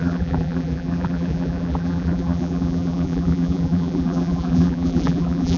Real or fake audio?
fake